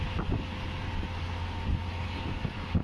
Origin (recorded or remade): recorded